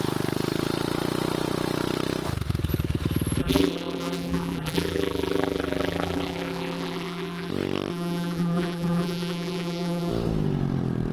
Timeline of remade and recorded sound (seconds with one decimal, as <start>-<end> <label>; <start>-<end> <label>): 0.0-3.4 recorded; 3.4-7.5 remade; 7.5-7.9 recorded; 7.9-10.1 remade; 10.1-11.1 recorded